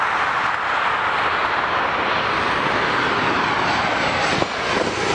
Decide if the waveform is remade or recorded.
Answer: recorded